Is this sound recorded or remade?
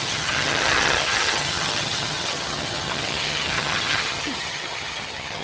remade